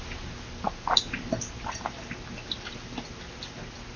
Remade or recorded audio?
recorded